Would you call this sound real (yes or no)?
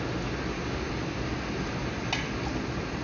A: yes